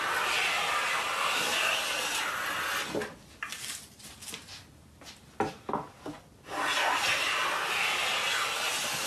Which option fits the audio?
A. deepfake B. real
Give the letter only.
B